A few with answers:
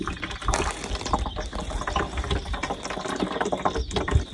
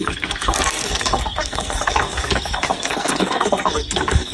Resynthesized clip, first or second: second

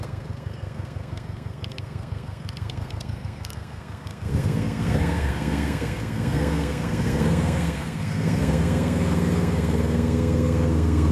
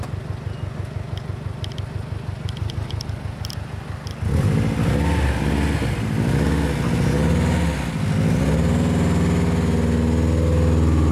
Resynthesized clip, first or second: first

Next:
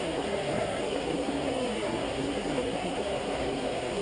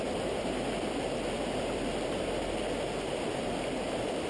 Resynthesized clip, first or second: first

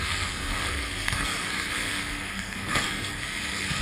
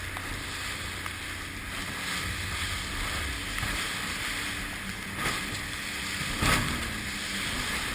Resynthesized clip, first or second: first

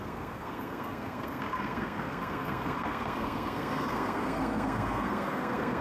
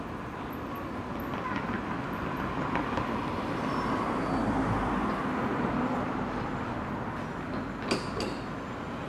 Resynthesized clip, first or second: first